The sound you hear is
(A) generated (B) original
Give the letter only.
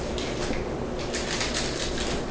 B